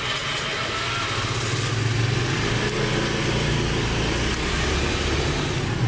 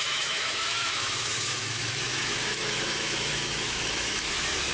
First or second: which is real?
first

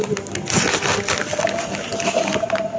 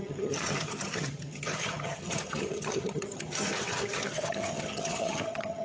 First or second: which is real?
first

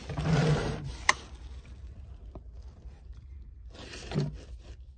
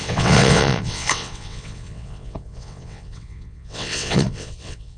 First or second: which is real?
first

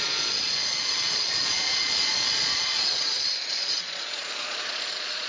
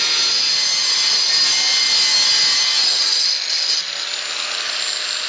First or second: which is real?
second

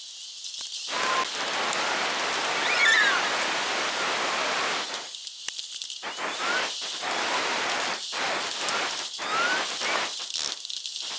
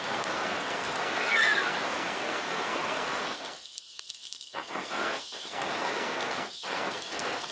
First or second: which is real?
first